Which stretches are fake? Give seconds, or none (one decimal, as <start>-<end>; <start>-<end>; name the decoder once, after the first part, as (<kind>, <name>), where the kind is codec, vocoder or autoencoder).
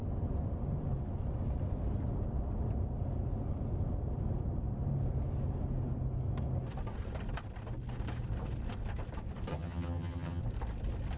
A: 9.5-10.4 (vocoder, HiFi-GAN)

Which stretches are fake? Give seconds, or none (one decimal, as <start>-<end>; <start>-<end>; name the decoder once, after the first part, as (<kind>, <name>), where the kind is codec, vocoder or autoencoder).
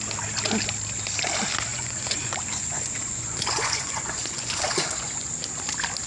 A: 1.7-5.3 (vocoder, Vocos)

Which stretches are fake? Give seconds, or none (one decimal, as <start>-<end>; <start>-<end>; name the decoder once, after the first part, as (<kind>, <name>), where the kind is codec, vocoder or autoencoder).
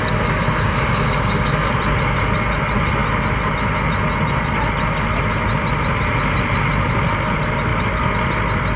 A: 0.0-1.7 (codec, DAC)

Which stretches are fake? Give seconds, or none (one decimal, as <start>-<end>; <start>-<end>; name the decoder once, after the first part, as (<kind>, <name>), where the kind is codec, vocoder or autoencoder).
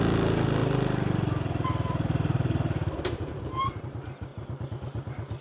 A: 0.6-3.8 (vocoder, BigVGAN v2)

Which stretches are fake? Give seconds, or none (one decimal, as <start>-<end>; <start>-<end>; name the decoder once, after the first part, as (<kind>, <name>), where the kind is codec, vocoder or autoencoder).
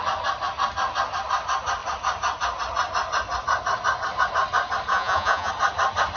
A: 4.9-5.5 (vocoder, Vocos)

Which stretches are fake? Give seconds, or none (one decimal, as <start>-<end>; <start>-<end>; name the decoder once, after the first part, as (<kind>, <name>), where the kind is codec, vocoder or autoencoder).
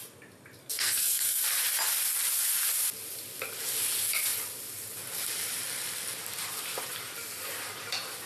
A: 0.6-1.4 (codec, SNAC)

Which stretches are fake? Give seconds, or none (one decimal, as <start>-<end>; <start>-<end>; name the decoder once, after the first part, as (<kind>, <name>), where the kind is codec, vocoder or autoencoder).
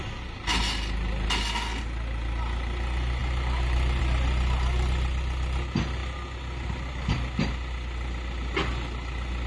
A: none